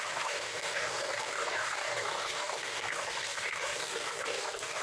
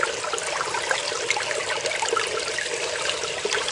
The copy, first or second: first